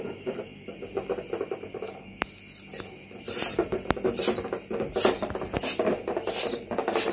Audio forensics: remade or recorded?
recorded